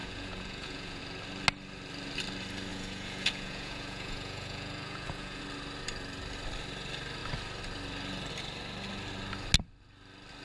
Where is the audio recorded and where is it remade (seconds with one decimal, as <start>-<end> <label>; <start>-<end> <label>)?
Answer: 0.0-1.0 remade; 1.0-2.7 recorded; 2.7-5.4 remade; 5.4-10.4 recorded

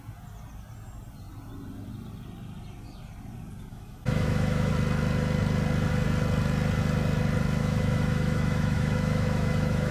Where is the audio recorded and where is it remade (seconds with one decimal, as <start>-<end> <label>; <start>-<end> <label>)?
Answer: 0.0-3.7 recorded; 3.7-4.7 remade; 4.7-7.6 recorded; 7.6-9.9 remade

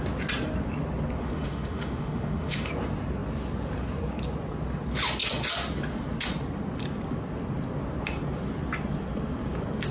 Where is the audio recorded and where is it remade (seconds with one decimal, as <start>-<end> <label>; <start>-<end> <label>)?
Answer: 0.0-1.2 recorded; 1.2-2.7 remade; 2.7-9.9 recorded

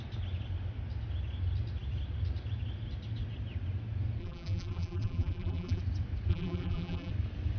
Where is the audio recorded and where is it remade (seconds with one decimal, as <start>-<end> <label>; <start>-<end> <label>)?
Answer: 0.0-4.2 recorded; 4.2-5.8 remade; 5.8-6.3 recorded; 6.3-7.1 remade; 7.1-7.6 recorded

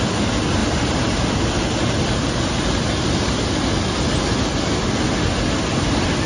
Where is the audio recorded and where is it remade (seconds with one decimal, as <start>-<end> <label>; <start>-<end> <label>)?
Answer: 0.0-0.6 recorded; 0.6-1.2 remade; 1.2-6.3 recorded

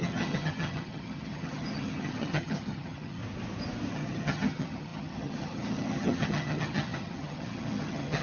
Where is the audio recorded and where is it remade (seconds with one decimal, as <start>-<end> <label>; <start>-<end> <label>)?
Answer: 0.0-3.2 remade; 3.2-3.9 recorded; 3.9-8.2 remade